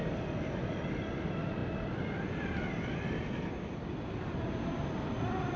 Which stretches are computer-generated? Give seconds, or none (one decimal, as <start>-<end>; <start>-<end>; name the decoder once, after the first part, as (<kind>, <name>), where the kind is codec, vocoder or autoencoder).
none